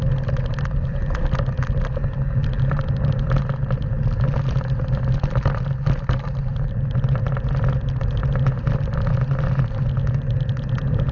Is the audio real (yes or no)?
yes